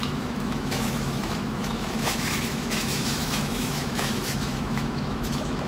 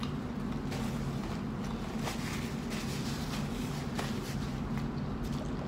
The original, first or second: second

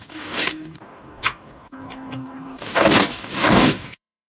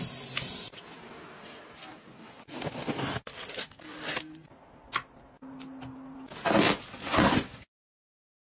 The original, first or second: second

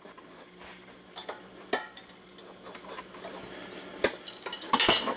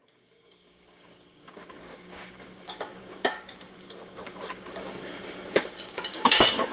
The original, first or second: first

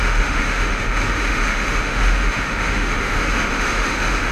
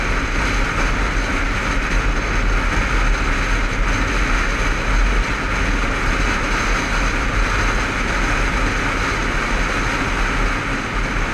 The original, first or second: second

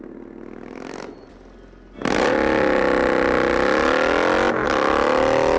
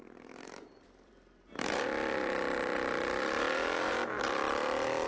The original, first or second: first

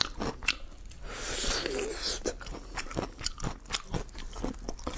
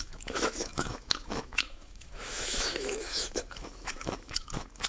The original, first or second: first